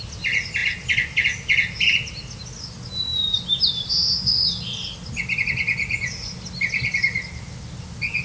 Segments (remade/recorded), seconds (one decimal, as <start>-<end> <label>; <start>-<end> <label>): 0.0-8.2 recorded